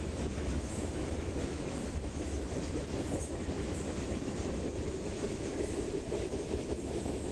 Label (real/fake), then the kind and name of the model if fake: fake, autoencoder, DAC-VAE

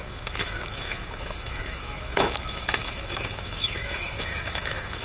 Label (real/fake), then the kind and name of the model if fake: fake, autoencoder, DAC-VAE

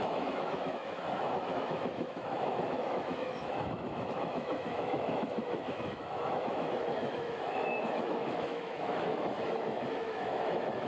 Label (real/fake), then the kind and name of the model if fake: fake, autoencoder, DAC-VAE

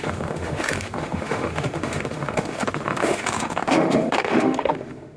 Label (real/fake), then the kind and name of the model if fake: fake, autoencoder, DAC-VAE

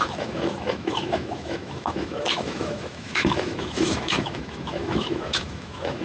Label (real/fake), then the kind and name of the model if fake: fake, autoencoder, DAC-VAE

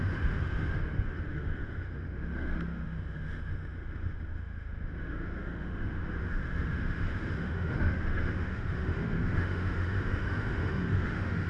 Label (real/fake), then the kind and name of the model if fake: fake, autoencoder, DAC-VAE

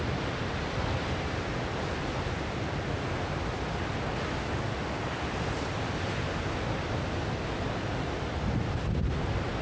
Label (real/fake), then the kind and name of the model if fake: real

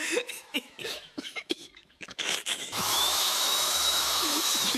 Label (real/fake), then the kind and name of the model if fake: fake, autoencoder, DAC-VAE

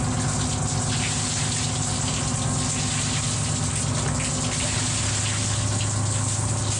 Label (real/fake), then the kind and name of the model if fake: real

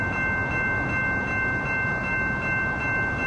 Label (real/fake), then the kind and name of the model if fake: real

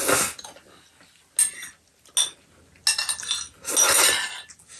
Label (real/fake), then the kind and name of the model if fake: real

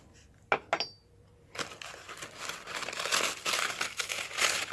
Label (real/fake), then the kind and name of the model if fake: real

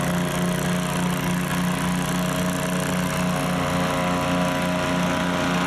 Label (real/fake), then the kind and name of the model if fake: real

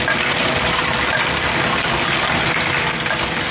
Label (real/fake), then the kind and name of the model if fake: real